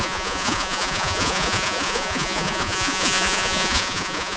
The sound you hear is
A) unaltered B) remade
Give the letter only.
B